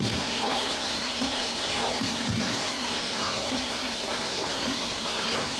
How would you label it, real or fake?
fake